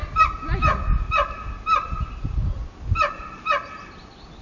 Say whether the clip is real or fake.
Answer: real